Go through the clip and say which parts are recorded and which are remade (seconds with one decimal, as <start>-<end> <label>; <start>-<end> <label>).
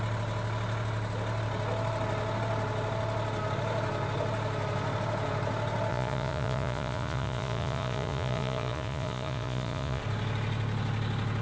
0.0-5.9 recorded; 5.9-10.0 remade; 10.0-11.4 recorded